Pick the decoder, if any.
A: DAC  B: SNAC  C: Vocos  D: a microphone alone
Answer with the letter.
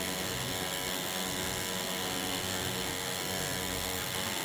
B